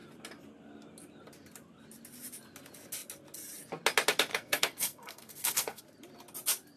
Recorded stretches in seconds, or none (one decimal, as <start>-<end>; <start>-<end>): 0.0-4.3; 5.8-6.8